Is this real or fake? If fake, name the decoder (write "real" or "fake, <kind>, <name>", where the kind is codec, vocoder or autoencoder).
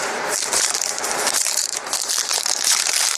fake, vocoder, BigVGAN v2